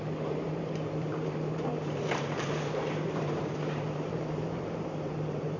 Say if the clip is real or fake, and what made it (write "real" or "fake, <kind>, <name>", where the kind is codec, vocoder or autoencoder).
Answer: fake, vocoder, BigVGAN v2